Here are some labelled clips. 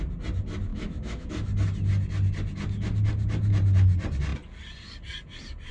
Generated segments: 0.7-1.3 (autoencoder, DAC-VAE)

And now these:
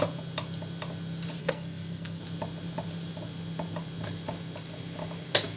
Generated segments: 1.4-2.2 (codec, SNAC)